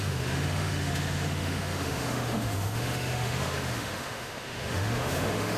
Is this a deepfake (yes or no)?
yes